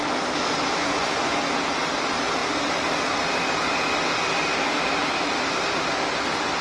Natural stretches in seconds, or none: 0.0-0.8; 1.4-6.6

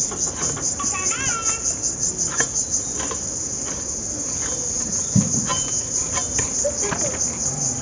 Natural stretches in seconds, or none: 0.0-5.5; 6.3-7.8

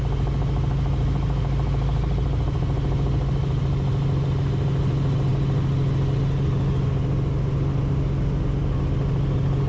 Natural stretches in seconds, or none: 0.0-9.7

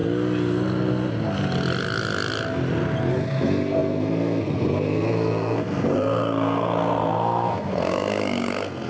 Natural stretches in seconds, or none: 0.0-3.1

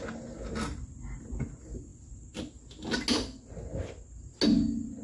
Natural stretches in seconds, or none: 0.0-5.0

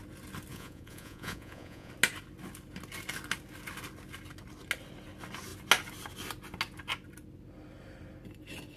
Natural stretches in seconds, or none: 0.0-0.5; 1.9-8.8

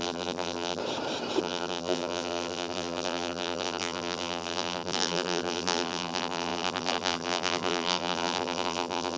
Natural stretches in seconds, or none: 0.8-1.4

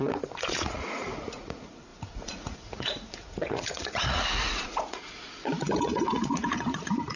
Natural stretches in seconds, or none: none